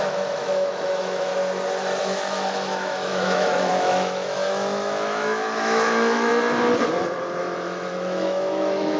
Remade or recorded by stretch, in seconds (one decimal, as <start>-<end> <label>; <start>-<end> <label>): 0.0-1.3 remade; 1.3-2.0 recorded; 2.0-6.3 remade; 6.3-7.4 recorded; 7.4-9.0 remade